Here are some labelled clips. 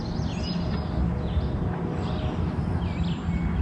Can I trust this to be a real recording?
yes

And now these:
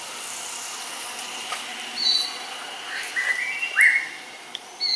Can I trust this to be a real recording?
yes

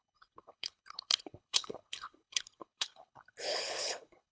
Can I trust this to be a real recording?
no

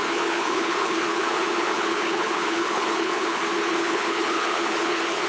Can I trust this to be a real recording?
no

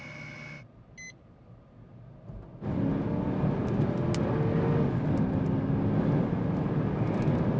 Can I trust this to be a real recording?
yes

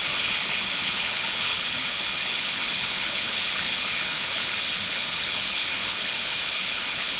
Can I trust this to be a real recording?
no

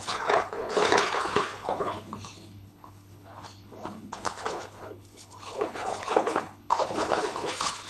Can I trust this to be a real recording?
no